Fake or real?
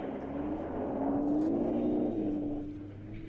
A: real